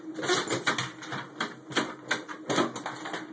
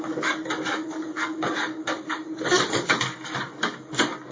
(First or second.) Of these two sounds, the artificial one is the second